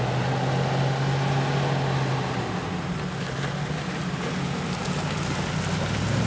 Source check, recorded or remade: recorded